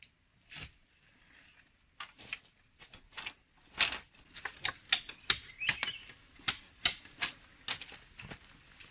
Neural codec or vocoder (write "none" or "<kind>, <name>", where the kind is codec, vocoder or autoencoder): none